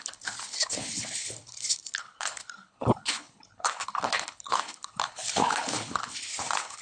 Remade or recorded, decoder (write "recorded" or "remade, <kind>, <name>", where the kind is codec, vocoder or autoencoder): remade, codec, HILCodec